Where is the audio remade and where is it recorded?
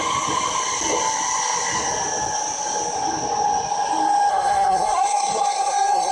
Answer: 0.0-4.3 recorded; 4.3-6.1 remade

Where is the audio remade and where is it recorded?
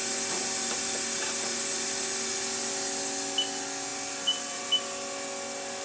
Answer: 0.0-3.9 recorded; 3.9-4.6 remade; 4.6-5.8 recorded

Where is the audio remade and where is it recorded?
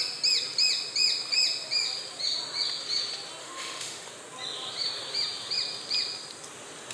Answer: 0.0-3.4 recorded; 3.4-4.1 remade; 4.1-6.9 recorded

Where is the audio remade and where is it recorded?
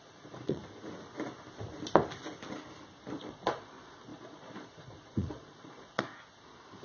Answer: 0.0-0.6 remade; 0.6-3.2 recorded; 3.2-6.1 remade; 6.1-6.8 recorded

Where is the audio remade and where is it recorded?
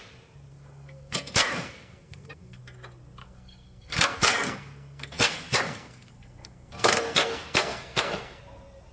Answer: 0.0-0.5 recorded; 0.5-2.6 remade; 2.6-3.2 recorded; 3.2-8.4 remade; 8.4-8.9 recorded